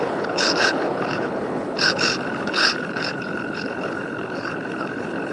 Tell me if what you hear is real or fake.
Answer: fake